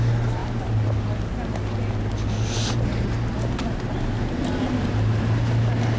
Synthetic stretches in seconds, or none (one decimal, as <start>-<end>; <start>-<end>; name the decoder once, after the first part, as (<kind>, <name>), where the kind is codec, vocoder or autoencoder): none